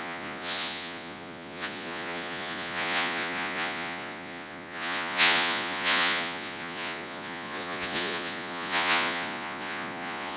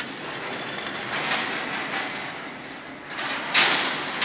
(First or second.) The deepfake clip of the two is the first